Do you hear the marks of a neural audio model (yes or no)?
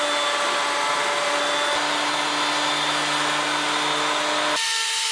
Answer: no